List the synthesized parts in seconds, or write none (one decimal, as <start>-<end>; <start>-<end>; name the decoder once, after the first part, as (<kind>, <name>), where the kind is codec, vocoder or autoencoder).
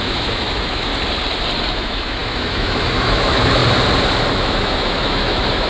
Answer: 0.0-0.9 (autoencoder, DAC-VAE); 1.7-3.6; 4.3-5.7